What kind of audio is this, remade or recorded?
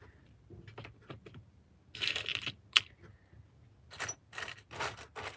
recorded